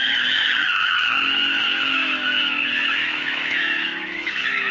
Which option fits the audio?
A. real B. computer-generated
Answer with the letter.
B